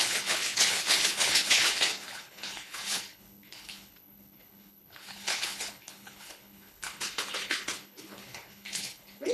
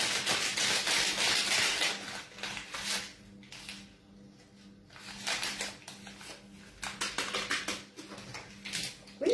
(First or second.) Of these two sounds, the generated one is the first